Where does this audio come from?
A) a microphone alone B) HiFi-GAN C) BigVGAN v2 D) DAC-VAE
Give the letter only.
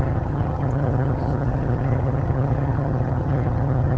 B